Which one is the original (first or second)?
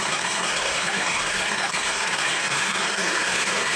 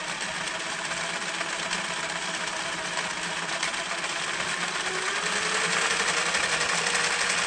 second